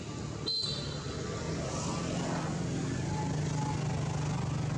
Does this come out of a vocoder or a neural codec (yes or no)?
no